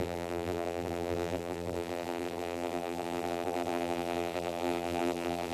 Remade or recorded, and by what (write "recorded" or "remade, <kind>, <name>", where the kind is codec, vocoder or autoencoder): remade, vocoder, BigVGAN v2